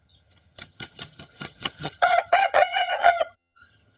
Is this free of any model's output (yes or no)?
no